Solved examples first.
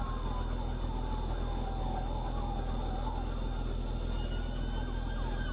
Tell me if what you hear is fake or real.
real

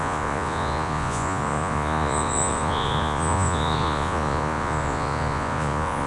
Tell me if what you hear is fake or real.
fake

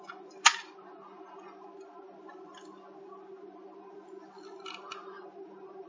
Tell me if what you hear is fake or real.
real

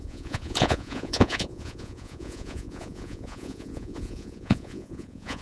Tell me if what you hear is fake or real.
fake